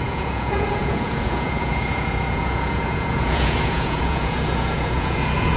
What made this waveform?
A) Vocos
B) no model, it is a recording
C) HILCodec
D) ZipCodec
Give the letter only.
A